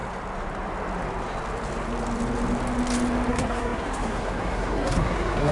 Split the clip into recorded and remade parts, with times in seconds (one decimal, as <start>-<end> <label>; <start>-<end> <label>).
0.0-3.3 recorded; 3.3-5.5 remade